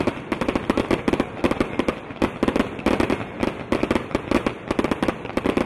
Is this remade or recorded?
remade